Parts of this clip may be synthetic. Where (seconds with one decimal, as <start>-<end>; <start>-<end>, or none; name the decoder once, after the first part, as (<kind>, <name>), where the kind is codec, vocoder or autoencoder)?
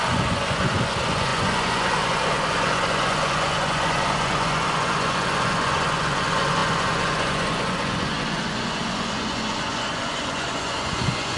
0.0-11.4 (vocoder, Vocos)